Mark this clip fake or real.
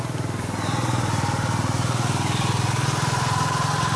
real